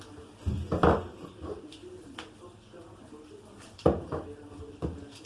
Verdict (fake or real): real